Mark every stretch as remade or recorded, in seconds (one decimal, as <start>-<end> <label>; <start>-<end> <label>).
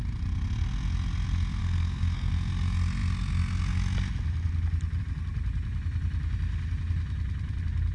0.0-1.6 recorded; 1.6-2.3 remade; 2.3-7.9 recorded